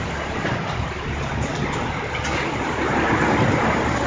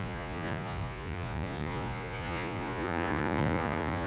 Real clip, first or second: first